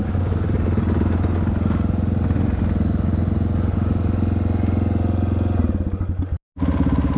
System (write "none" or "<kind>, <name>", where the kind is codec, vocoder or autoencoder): none